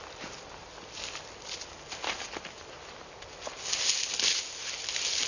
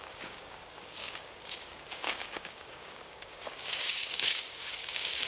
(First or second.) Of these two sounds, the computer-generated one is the second